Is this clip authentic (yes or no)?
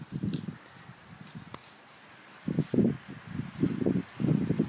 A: yes